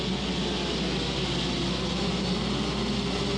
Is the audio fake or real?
real